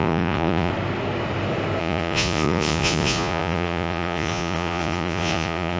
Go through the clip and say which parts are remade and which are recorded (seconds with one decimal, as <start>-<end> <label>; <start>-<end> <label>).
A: 0.0-0.7 remade; 0.7-1.8 recorded; 1.8-5.8 remade